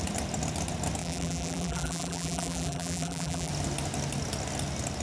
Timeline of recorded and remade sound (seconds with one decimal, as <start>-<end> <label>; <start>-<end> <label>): 0.0-1.0 recorded; 1.0-3.5 remade; 3.5-5.0 recorded